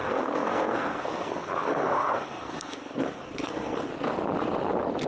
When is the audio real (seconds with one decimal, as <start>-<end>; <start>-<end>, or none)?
3.9-5.1